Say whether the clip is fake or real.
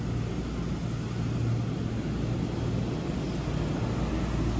real